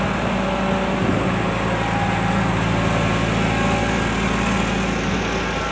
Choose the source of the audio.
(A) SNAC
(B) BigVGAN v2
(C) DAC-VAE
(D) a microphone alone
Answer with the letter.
D